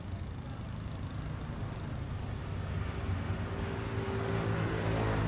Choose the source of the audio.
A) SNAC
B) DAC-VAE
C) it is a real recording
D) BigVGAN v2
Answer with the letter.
C